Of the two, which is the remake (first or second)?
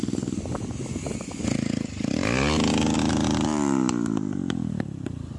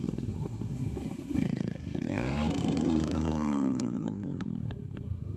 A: second